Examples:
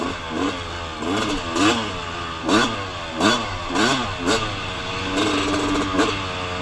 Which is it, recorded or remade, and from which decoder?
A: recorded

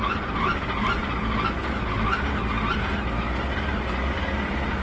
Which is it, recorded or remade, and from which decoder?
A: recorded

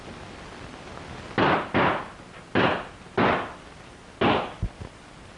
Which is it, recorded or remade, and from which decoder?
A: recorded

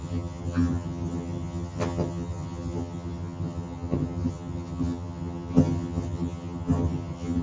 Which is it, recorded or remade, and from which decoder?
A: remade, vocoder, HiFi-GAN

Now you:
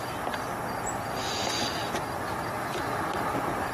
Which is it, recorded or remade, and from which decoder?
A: recorded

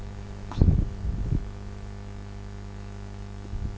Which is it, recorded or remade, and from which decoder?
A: remade, autoencoder, DAC-VAE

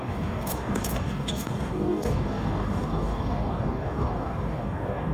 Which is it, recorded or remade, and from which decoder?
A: remade, codec, DAC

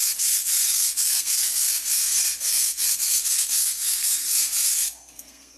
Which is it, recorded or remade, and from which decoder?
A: remade, codec, SNAC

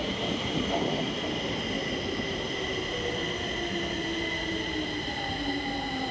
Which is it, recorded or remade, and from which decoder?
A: recorded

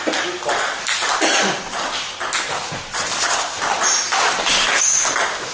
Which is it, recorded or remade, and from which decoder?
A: recorded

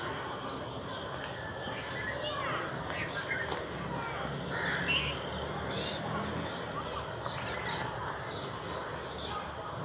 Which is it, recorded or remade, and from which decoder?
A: recorded